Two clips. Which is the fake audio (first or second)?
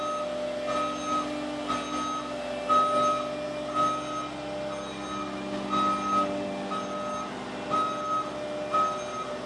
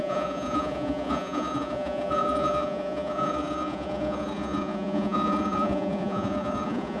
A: second